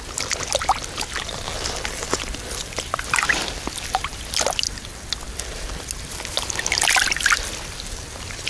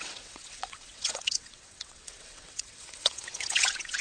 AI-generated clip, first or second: second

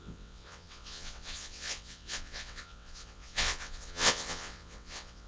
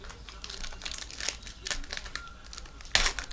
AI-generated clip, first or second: first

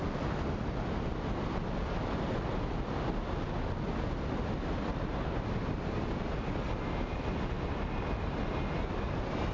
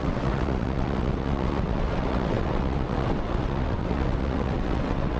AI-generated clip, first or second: second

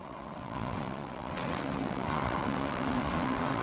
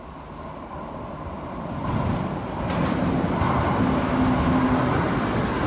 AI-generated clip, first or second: first